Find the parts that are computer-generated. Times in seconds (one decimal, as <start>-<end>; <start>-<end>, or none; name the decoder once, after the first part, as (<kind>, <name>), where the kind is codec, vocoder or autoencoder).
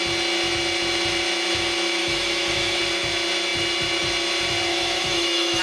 2.0-2.8 (autoencoder, DAC-VAE); 4.7-5.6